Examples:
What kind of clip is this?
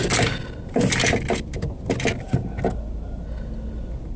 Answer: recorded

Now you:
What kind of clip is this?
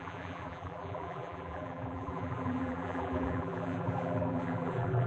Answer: remade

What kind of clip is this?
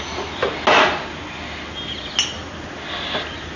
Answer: recorded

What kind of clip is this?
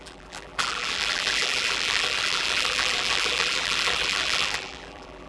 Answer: remade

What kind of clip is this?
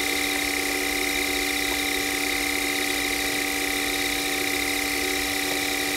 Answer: recorded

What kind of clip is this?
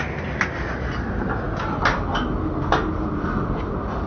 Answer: recorded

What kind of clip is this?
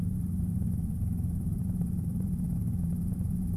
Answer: remade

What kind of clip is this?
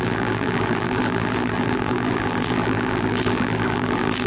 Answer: remade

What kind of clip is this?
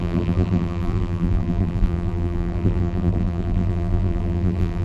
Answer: remade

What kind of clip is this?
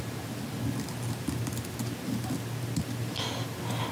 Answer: recorded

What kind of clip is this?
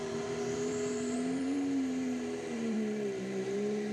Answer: remade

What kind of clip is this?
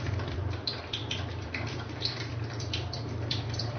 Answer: remade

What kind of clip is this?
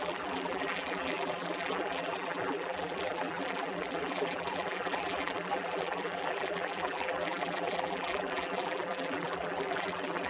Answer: remade